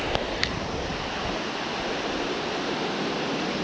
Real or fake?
real